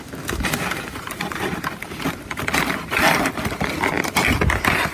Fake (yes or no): no